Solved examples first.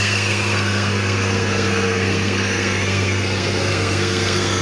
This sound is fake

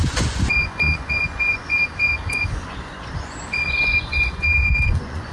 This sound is fake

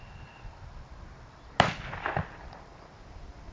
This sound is real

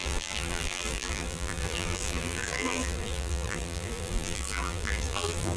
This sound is fake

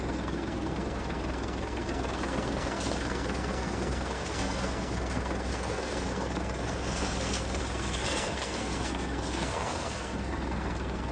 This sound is fake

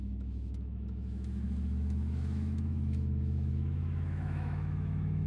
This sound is fake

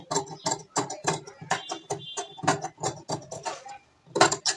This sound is real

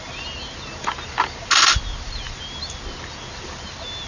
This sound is real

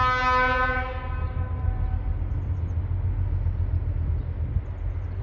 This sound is real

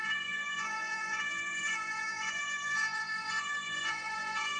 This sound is fake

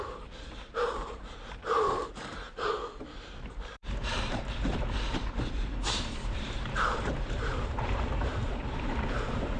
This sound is fake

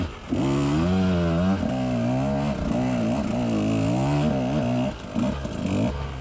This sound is real